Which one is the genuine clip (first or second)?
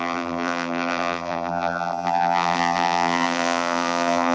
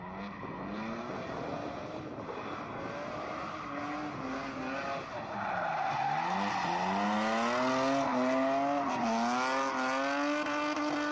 second